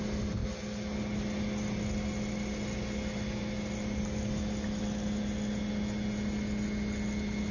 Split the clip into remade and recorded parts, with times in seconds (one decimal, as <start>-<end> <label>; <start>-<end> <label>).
0.0-7.5 recorded

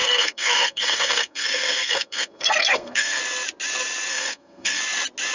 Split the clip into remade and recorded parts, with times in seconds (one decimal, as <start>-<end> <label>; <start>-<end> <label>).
0.0-3.2 remade; 3.2-4.1 recorded; 4.1-4.8 remade; 4.8-5.3 recorded

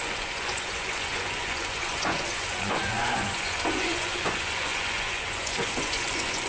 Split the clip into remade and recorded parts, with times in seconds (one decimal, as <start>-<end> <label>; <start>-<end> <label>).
0.0-6.5 remade

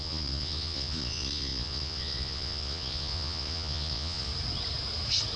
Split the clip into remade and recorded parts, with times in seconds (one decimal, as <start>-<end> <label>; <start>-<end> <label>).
0.0-4.3 remade; 4.3-5.4 recorded

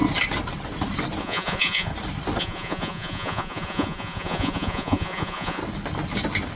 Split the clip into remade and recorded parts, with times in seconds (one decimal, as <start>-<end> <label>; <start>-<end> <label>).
0.0-1.2 recorded; 1.2-1.9 remade; 1.9-2.4 recorded; 2.4-5.6 remade; 5.6-6.6 recorded